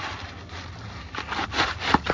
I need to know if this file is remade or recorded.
recorded